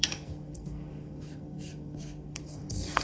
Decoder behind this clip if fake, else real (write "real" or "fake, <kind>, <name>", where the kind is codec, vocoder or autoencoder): fake, codec, SNAC